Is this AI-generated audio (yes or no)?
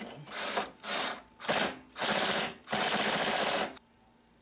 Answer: no